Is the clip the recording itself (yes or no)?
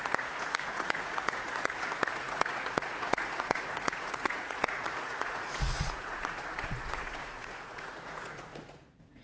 no